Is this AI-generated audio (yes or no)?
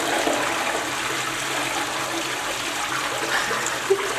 no